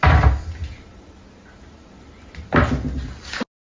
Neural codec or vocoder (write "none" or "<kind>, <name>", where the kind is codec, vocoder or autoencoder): none